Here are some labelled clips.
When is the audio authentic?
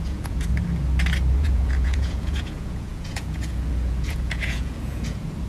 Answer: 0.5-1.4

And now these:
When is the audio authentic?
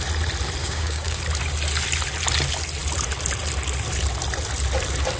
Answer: 0.0-0.6; 1.2-5.2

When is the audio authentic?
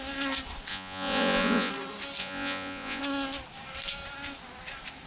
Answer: 0.0-0.7; 1.7-2.2; 3.0-5.1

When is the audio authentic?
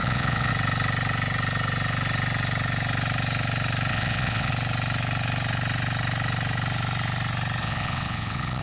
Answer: 0.5-3.9; 4.5-7.6